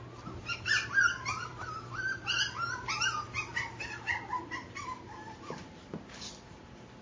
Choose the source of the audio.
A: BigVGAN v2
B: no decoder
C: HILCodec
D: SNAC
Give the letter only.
A